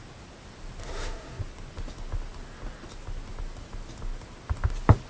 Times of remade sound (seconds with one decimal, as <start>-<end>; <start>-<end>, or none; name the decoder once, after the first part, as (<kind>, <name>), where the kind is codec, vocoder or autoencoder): 0.8-1.4 (codec, SNAC)